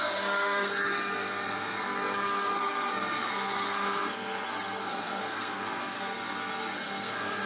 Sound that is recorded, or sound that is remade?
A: remade